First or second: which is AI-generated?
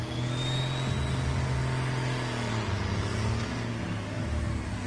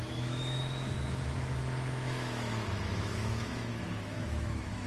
second